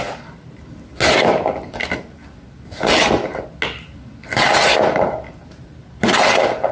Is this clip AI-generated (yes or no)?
no